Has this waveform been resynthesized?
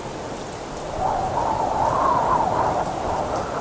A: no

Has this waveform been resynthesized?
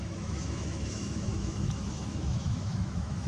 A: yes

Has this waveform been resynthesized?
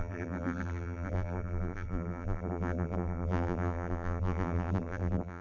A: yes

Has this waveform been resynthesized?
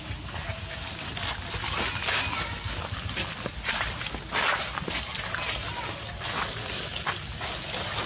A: no